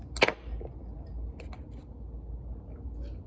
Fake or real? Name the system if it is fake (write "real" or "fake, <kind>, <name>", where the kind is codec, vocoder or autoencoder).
real